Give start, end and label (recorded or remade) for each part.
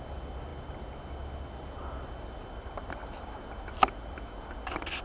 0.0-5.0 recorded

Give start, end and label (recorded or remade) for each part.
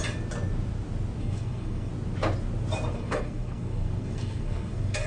0.0-1.2 recorded; 1.2-1.9 remade; 1.9-2.9 recorded; 2.9-5.1 remade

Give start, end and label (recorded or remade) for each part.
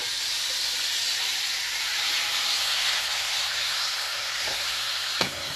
0.0-2.6 recorded; 2.6-5.6 remade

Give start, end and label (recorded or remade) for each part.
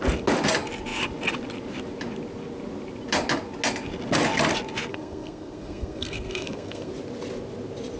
0.0-4.9 recorded; 4.9-6.9 remade; 6.9-8.0 recorded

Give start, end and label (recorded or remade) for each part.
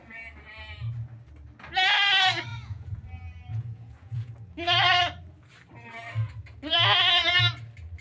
0.0-2.5 recorded; 2.5-3.0 remade; 3.0-3.5 recorded; 3.5-4.3 remade; 4.3-8.0 recorded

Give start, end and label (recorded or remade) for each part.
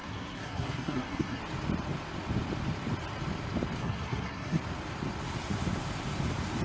0.0-1.4 remade; 1.4-3.8 recorded; 3.8-4.6 remade; 4.6-6.6 recorded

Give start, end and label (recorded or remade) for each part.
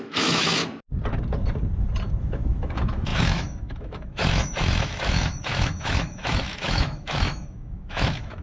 0.0-0.6 remade; 0.6-2.2 recorded; 2.2-8.4 remade